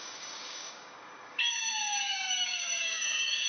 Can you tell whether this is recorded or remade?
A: remade